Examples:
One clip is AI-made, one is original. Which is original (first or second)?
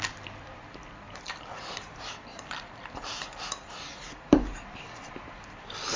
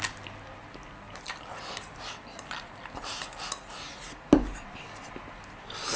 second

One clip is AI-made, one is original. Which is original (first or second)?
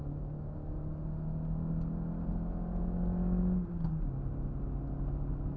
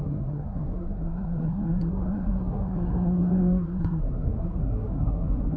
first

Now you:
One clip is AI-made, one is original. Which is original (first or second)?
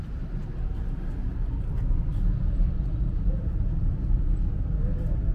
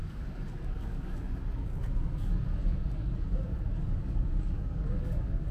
first